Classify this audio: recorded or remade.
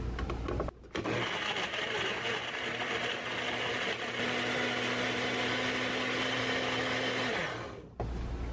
recorded